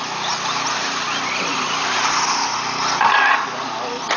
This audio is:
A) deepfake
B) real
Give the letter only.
B